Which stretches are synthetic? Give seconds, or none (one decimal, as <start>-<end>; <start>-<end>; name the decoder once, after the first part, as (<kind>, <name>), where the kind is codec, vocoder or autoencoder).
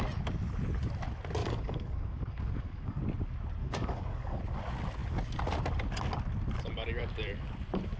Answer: 1.4-3.0 (codec, DAC); 3.6-4.4